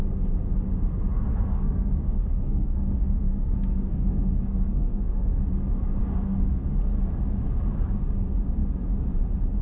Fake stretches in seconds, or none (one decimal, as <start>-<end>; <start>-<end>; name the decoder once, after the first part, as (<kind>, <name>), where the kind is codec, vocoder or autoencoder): 1.3-5.4 (codec, SNAC); 6.0-6.6